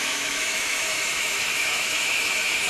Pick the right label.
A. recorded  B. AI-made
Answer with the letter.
B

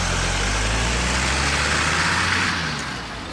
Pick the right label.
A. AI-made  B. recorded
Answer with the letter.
B